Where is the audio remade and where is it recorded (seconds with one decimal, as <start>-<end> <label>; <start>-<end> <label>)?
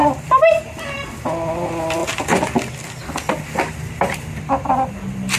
0.0-2.0 remade; 2.0-3.3 recorded; 3.3-5.4 remade